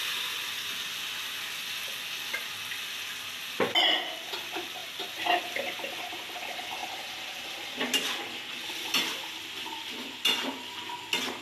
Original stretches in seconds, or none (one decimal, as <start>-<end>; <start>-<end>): 0.0-11.4